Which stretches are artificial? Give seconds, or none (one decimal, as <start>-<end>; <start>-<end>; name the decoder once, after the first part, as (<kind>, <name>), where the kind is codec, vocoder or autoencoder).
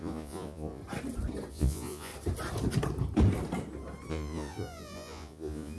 0.0-0.8 (vocoder, Vocos); 1.5-2.1; 4.1-5.8